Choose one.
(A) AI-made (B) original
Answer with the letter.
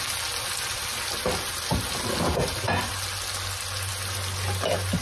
B